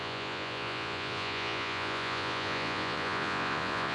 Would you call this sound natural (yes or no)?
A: no